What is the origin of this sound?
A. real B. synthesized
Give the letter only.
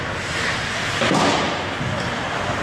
A